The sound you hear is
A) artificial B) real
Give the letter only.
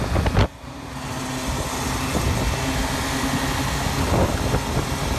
B